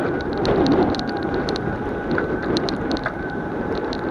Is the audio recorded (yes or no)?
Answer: no